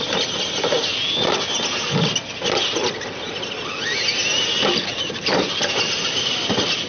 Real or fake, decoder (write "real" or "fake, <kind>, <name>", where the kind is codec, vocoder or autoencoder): real